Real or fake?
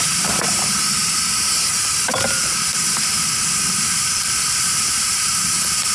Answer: fake